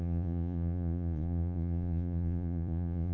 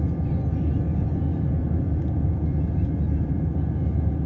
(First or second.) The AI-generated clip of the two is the first